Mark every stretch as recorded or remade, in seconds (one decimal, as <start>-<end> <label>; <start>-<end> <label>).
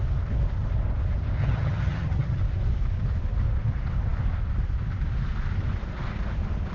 0.0-1.4 recorded; 1.4-2.4 remade; 2.4-6.7 recorded